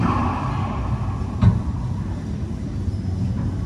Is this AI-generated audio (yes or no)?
no